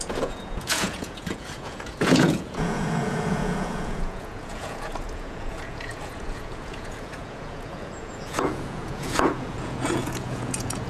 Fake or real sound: fake